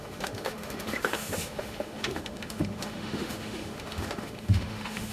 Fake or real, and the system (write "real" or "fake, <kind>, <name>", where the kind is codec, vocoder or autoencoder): fake, autoencoder, DAC-VAE